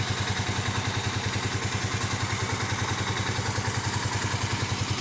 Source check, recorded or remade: recorded